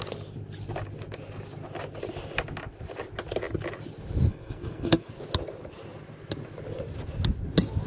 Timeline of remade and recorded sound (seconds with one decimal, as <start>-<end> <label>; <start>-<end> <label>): 0.0-4.3 recorded; 4.3-5.1 remade; 5.1-7.9 recorded